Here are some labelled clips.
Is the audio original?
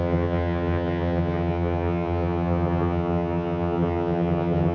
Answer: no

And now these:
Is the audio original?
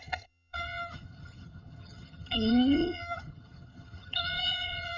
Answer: no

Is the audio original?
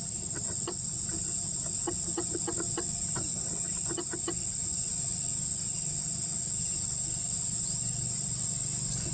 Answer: yes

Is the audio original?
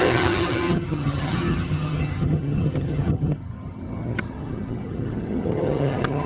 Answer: no